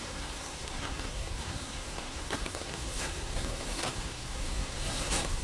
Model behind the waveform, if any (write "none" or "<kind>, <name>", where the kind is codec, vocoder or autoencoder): codec, SNAC